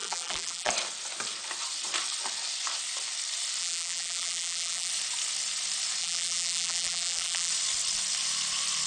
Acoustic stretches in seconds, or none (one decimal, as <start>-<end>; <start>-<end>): 0.7-3.6; 4.9-6.0; 7.5-8.9